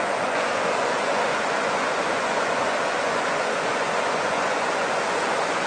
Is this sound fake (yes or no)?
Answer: yes